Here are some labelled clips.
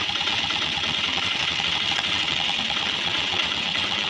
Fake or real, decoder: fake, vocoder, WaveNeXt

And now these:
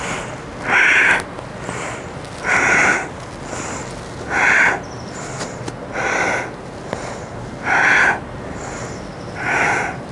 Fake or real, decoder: real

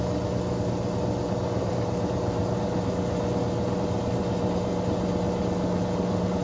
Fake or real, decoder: real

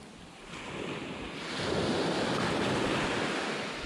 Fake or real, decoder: real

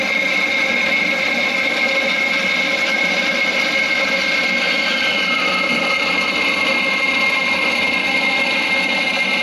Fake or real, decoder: real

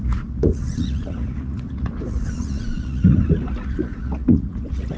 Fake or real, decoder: fake, vocoder, Vocos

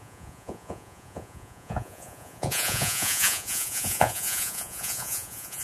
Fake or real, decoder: fake, vocoder, Vocos